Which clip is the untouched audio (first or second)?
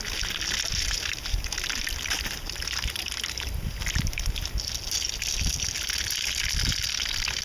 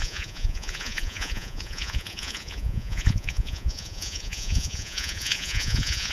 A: first